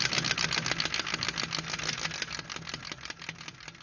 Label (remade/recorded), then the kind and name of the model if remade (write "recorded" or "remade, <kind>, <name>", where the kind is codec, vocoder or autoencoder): recorded